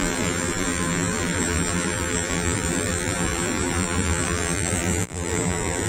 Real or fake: fake